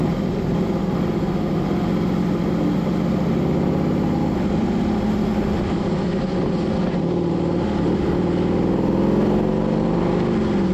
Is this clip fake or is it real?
real